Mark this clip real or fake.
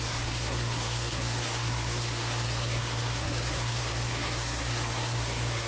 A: fake